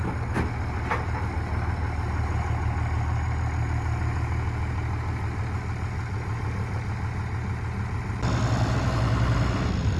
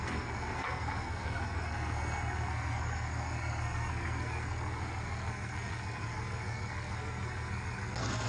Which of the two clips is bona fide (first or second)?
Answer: first